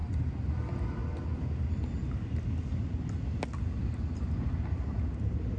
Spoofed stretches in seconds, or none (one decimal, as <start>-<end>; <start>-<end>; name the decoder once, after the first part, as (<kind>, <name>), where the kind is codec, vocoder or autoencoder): none